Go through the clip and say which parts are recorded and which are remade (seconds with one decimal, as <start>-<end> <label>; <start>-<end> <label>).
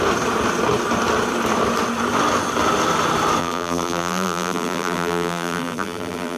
0.0-3.4 recorded; 3.4-6.4 remade